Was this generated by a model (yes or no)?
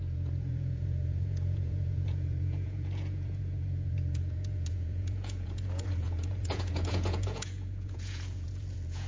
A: yes